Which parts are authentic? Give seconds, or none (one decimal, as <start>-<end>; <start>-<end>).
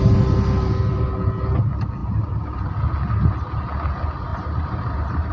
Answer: 0.0-2.0; 2.7-4.3